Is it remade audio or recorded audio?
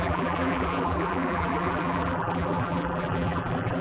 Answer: remade